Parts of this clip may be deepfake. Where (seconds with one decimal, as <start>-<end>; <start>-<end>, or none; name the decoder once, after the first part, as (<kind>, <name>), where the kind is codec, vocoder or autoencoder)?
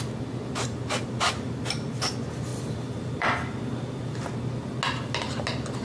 2.5-4.1 (vocoder, BigVGAN v2)